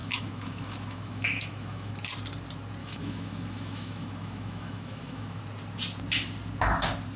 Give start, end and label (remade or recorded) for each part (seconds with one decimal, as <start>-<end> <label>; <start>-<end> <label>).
0.0-1.9 remade; 1.9-2.8 recorded; 2.8-5.4 remade; 5.4-7.2 recorded